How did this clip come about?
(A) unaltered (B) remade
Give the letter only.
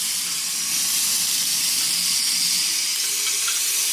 A